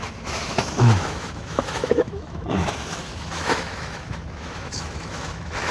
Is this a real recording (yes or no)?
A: no